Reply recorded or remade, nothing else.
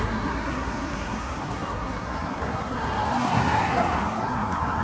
remade